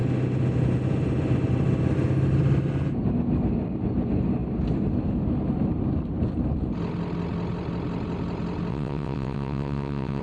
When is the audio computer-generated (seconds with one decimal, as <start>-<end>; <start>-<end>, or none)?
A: 8.7-10.2